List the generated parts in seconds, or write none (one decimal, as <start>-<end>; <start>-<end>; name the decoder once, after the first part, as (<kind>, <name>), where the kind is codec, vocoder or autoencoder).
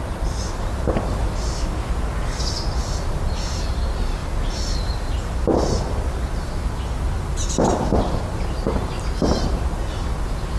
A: none